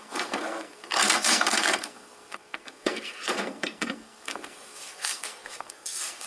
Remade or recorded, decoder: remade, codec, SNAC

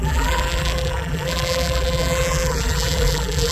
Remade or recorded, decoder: remade, vocoder, BigVGAN v2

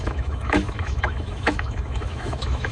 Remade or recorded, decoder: remade, autoencoder, DAC-VAE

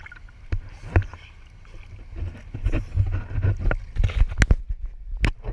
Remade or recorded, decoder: recorded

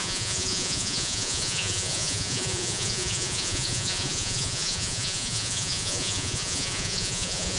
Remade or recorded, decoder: remade, vocoder, Vocos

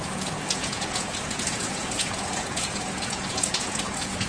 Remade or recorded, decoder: remade, vocoder, Vocos